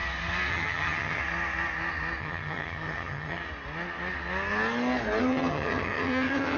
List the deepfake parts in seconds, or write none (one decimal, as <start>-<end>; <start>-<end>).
0.5-1.2; 2.2-3.4; 5.2-6.6